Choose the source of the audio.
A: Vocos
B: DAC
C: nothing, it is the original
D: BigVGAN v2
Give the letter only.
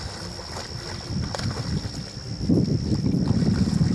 C